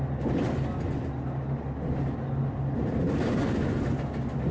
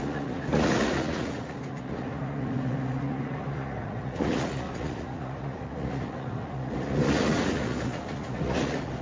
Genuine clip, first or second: first